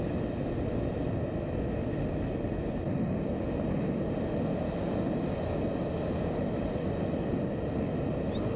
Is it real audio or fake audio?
real